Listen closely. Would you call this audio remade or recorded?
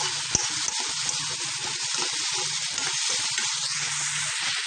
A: recorded